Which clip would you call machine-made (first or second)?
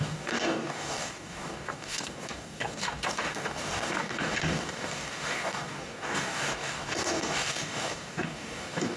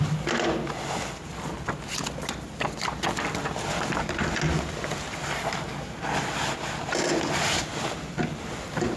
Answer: first